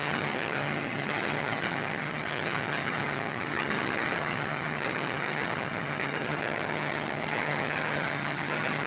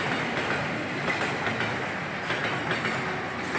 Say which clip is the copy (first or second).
first